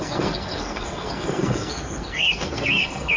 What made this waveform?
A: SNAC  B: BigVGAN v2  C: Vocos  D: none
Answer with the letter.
A